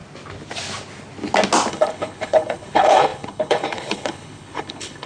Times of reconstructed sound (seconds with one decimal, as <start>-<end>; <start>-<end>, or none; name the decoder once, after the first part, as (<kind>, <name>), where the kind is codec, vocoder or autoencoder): 1.7-5.1 (codec, HILCodec)